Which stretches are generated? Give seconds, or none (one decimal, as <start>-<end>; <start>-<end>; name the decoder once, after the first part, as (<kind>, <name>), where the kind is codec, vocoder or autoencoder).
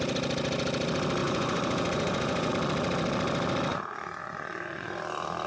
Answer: 1.2-2.5 (vocoder, Vocos); 3.7-5.0